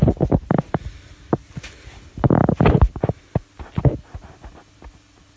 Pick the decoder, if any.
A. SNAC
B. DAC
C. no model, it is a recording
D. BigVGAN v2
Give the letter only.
C